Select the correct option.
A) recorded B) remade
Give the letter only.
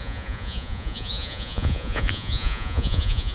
B